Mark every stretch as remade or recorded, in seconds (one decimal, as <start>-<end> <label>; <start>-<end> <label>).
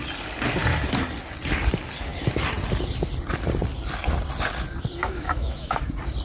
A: 0.0-5.0 recorded; 5.0-5.8 remade; 5.8-6.2 recorded